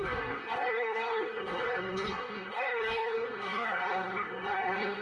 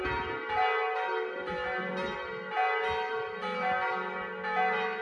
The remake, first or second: first